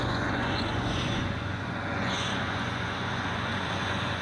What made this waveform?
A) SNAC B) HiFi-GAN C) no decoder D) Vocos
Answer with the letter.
D